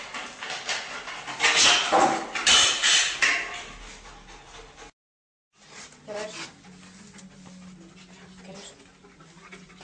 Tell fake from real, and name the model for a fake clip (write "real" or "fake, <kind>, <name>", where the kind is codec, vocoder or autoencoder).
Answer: real